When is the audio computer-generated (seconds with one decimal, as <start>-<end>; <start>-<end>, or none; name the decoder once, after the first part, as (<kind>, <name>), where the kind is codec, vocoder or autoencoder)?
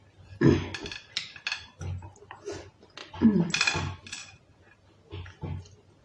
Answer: none